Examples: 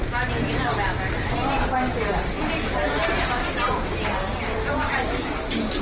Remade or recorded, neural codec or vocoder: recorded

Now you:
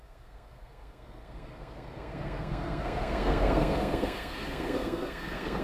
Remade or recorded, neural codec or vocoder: remade, codec, SNAC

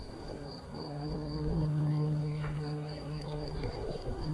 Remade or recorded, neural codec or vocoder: remade, codec, SNAC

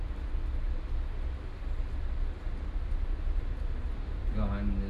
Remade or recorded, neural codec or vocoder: recorded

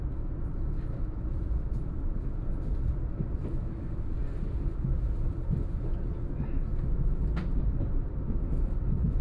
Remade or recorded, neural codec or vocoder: recorded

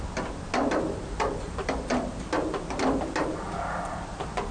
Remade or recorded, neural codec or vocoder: recorded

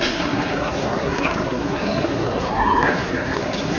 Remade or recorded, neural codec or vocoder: remade, codec, SNAC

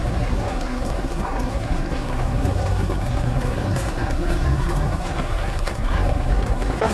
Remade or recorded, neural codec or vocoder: remade, codec, SNAC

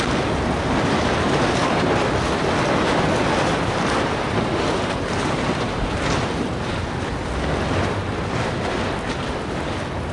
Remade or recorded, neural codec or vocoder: recorded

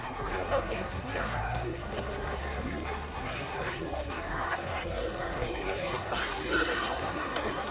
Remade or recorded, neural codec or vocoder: remade, codec, SNAC